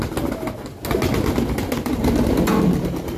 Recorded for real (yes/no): yes